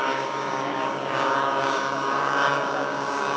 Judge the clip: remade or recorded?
remade